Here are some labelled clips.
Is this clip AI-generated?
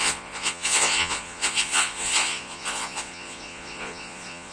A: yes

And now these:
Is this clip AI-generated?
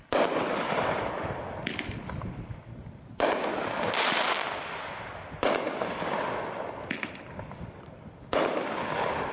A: no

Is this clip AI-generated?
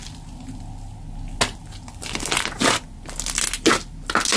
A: no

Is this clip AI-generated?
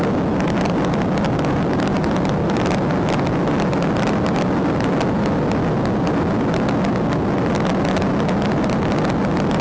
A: no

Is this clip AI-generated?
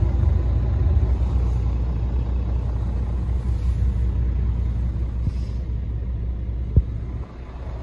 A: no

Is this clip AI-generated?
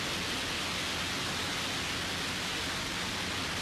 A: no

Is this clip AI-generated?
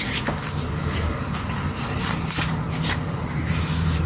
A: no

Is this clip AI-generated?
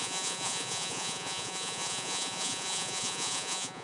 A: yes